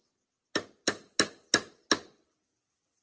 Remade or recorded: recorded